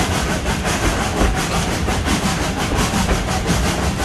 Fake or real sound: fake